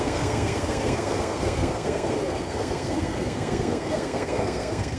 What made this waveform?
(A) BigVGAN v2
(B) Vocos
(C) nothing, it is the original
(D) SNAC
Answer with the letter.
D